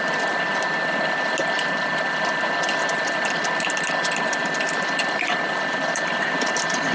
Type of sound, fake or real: real